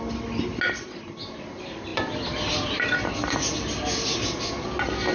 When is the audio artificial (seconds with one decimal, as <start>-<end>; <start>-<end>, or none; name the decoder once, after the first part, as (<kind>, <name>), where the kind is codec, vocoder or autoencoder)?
1.9-3.0 (vocoder, BigVGAN v2)